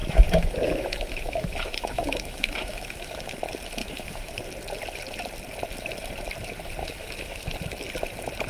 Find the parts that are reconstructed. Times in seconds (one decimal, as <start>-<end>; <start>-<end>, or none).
0.0-3.4; 3.8-4.4; 6.8-7.4